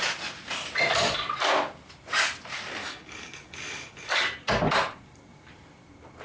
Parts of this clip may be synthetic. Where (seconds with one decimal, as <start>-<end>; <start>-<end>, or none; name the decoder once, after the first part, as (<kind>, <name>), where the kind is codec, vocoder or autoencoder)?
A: 2.8-4.2 (codec, DAC)

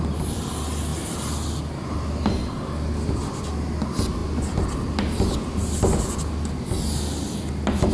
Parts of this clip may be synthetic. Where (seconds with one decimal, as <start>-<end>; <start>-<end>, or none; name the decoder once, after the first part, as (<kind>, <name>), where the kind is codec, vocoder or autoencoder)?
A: none

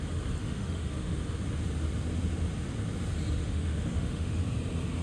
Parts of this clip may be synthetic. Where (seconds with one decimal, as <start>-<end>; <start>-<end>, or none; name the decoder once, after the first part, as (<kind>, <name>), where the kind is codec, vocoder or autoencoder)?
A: 0.4-1.2 (autoencoder, DAC-VAE); 3.4-4.4

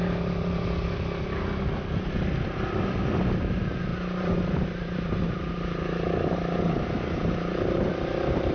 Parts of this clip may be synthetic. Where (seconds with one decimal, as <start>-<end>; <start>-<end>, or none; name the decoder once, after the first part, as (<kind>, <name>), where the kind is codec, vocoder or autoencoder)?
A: 3.9-8.5 (vocoder, BigVGAN v2)

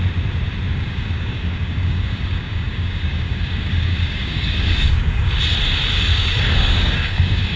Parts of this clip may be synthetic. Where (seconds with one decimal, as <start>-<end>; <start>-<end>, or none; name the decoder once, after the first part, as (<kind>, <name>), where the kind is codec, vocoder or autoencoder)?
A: 0.7-5.3 (codec, DAC); 6.1-7.6